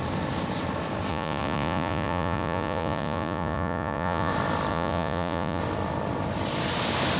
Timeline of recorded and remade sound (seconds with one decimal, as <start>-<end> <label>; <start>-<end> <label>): 0.0-1.1 recorded; 1.1-4.3 remade; 4.3-4.7 recorded; 4.7-5.6 remade; 5.6-7.2 recorded